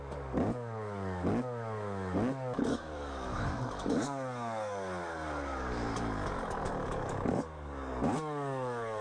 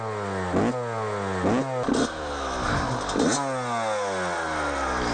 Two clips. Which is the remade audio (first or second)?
first